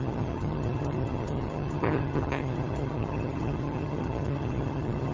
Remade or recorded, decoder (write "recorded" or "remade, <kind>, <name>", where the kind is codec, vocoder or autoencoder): remade, vocoder, HiFi-GAN